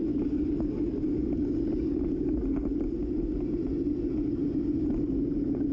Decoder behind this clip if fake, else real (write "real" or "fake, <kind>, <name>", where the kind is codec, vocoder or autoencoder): real